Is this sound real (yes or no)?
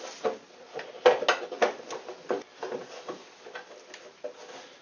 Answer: yes